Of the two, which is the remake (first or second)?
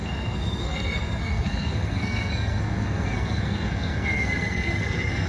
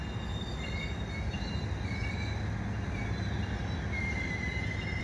first